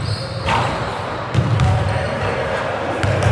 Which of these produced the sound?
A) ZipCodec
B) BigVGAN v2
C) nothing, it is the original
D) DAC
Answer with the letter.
B